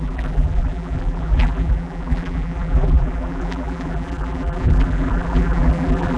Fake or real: fake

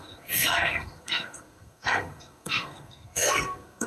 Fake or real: fake